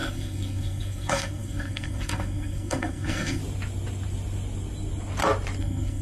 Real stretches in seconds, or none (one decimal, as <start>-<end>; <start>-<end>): 3.4-5.6